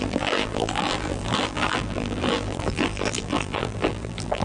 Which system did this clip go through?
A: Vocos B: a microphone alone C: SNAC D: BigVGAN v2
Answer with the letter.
D